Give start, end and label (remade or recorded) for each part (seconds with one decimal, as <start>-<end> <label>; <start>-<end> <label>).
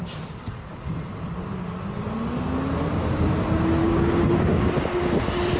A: 0.0-3.8 recorded; 3.8-4.7 remade; 4.7-5.6 recorded